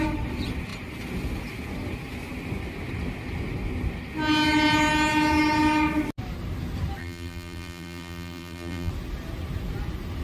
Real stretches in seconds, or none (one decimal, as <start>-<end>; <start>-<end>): 0.0-7.0; 8.9-10.2